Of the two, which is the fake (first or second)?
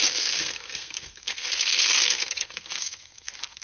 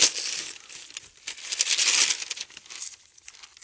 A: first